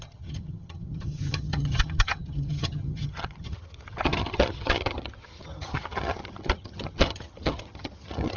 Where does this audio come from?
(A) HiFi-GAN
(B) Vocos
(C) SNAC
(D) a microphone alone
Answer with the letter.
A